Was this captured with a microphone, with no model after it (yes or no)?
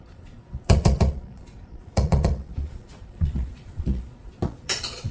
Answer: no